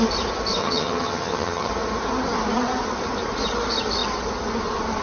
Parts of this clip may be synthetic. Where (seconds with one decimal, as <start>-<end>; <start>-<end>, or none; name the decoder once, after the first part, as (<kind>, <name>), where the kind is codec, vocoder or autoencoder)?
0.6-1.7 (vocoder, HiFi-GAN)